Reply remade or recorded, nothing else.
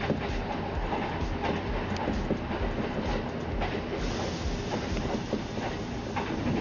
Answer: recorded